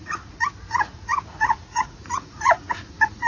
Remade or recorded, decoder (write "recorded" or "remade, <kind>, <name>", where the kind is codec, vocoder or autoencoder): remade, vocoder, Vocos